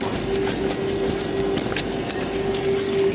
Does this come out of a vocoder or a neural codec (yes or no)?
no